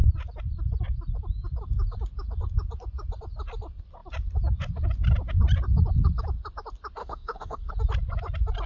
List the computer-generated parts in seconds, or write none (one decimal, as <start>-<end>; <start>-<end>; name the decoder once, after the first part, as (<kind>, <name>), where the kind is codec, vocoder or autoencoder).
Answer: 7.0-7.7 (autoencoder, DAC-VAE)